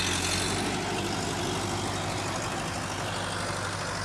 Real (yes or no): yes